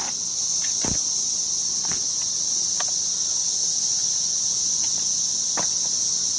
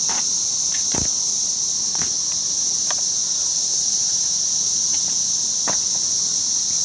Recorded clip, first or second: first